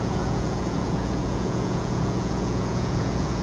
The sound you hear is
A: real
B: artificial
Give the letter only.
B